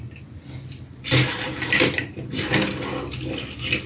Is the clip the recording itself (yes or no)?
yes